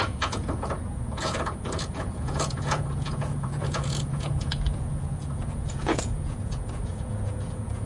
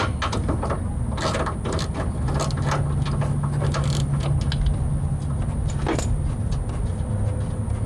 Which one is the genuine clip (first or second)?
second